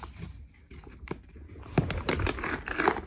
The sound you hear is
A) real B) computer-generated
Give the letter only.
B